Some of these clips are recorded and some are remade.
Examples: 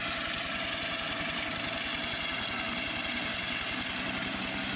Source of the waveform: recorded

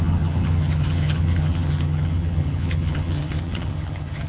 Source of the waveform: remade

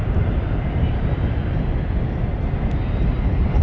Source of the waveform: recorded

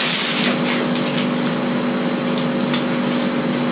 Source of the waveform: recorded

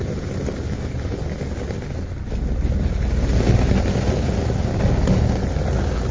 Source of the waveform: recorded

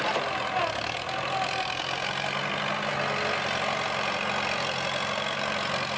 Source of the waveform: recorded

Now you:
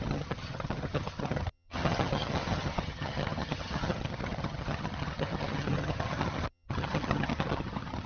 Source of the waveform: remade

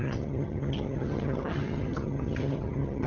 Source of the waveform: remade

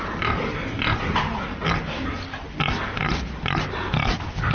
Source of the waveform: recorded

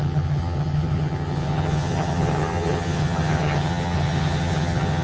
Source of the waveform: remade